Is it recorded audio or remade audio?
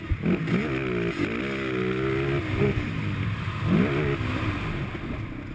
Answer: recorded